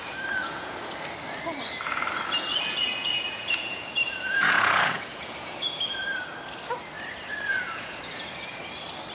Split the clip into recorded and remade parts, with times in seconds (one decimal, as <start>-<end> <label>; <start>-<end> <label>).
0.0-0.4 recorded; 0.4-0.9 remade; 0.9-2.5 recorded; 2.5-5.8 remade; 5.8-7.5 recorded; 7.5-8.6 remade; 8.6-9.1 recorded

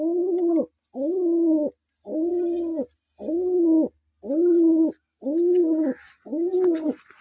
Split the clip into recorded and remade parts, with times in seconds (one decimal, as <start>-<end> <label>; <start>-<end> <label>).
0.0-7.2 recorded

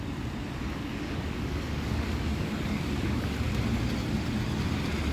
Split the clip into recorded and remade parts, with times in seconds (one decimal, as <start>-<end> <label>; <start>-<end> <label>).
0.0-0.6 recorded; 0.6-3.6 remade; 3.6-5.1 recorded

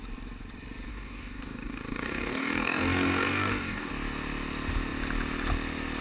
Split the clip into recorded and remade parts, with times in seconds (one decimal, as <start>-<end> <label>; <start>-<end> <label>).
0.0-0.9 recorded; 0.9-3.9 remade; 3.9-6.0 recorded

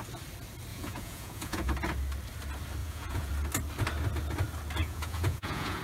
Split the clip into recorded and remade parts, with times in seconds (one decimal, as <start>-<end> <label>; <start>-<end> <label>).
0.0-0.7 recorded; 0.7-1.7 remade; 1.7-2.8 recorded; 2.8-3.3 remade; 3.3-4.8 recorded; 4.8-5.8 remade

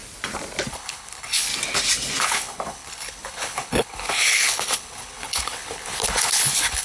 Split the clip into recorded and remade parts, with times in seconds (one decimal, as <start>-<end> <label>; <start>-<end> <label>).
0.0-0.7 recorded; 0.7-1.5 remade; 1.5-2.2 recorded; 2.2-6.8 remade

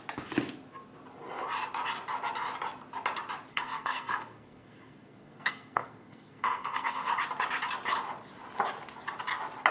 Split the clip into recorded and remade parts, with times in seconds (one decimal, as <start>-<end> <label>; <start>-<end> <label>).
0.0-3.5 recorded; 3.5-7.1 remade; 7.1-9.7 recorded